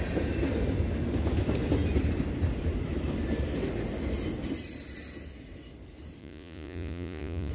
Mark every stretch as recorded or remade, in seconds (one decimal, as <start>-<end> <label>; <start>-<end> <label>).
0.0-6.2 recorded; 6.2-7.5 remade